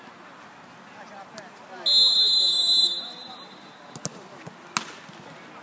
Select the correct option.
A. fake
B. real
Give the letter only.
B